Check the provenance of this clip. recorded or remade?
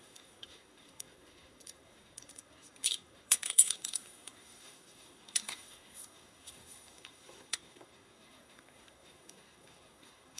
remade